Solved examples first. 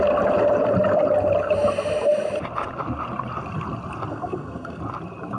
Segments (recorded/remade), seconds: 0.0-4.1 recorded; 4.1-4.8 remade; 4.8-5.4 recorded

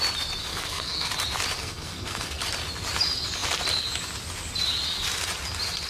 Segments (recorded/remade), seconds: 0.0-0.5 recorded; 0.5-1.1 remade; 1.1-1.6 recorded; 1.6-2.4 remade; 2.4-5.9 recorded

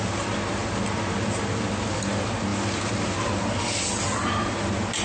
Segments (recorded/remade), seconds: 0.0-5.0 recorded

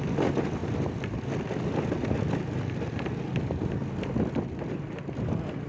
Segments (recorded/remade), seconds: 0.0-5.7 recorded

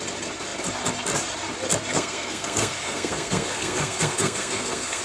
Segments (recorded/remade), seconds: 0.0-1.9 recorded; 1.9-5.0 remade

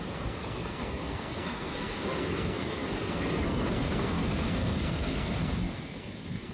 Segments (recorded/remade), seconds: 0.0-6.5 remade

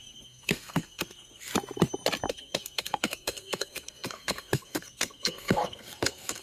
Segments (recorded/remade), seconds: 0.0-1.5 remade; 1.5-2.3 recorded; 2.3-6.4 remade

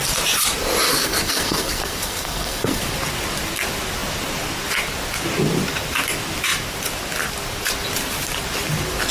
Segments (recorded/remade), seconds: 0.0-0.9 recorded; 0.9-2.8 remade; 2.8-9.1 recorded